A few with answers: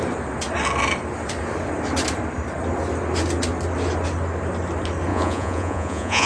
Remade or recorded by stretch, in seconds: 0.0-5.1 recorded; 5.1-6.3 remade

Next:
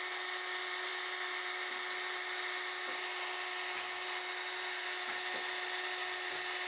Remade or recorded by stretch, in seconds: 0.0-6.7 recorded

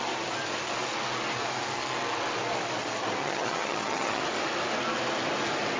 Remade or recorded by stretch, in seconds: 0.0-3.2 recorded; 3.2-4.2 remade; 4.2-5.8 recorded

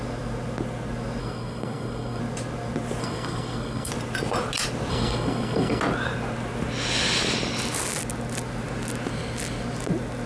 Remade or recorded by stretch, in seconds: 0.0-1.2 recorded; 1.2-2.2 remade; 2.2-3.0 recorded; 3.0-3.9 remade; 3.9-4.9 recorded; 4.9-5.8 remade; 5.8-10.3 recorded

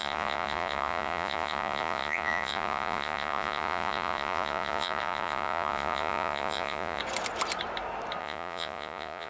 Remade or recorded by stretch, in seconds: 0.0-7.0 remade; 7.0-8.2 recorded; 8.2-9.3 remade